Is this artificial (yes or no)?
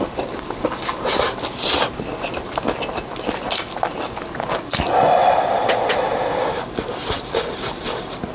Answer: no